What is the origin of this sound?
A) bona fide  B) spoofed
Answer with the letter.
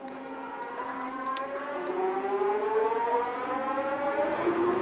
B